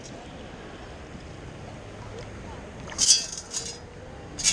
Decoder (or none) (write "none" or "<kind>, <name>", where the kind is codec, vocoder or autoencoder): none